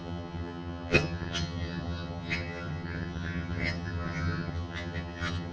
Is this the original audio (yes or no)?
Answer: no